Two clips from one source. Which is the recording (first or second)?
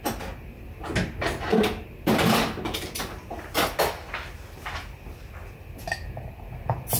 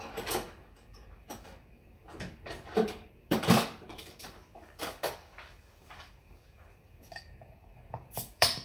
first